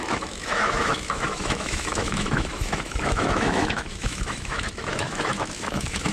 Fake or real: fake